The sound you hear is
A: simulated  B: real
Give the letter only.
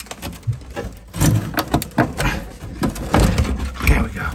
B